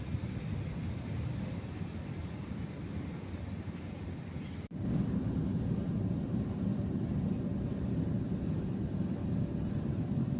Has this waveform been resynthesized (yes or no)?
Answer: no